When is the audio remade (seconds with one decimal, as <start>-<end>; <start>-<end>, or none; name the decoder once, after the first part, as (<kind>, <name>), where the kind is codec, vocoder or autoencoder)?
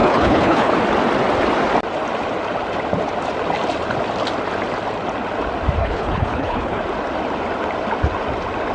0.0-0.7 (codec, HILCodec); 5.8-6.8